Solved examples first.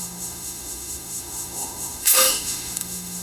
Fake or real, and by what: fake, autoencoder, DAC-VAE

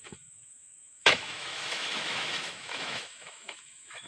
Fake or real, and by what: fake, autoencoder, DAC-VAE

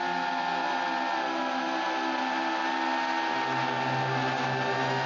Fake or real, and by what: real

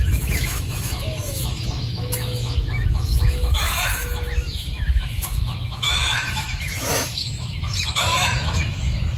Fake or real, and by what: fake, autoencoder, DAC-VAE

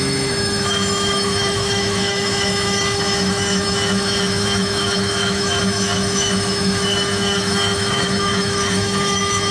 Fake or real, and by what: fake, autoencoder, DAC-VAE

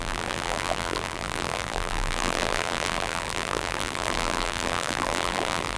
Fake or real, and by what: fake, vocoder, BigVGAN v2